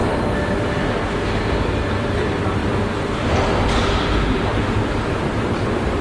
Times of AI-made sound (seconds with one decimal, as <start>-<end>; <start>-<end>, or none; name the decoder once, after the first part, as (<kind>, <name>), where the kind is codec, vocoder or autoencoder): 2.1-2.6 (vocoder, BigVGAN v2); 4.5-6.0